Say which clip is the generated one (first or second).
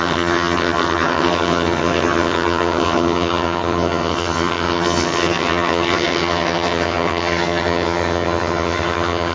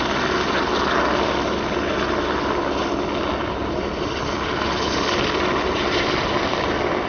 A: first